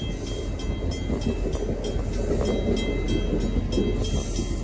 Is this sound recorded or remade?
recorded